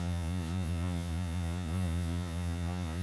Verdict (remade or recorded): remade